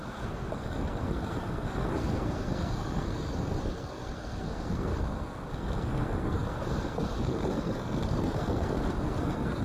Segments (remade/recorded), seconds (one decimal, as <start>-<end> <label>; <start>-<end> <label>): 0.0-9.6 remade